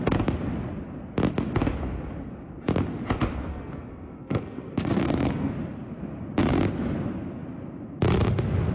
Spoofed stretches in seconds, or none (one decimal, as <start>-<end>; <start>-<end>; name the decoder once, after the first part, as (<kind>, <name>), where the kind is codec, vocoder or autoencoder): 3.5-5.5 (codec, SNAC)